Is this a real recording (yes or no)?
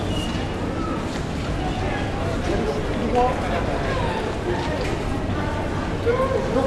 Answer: yes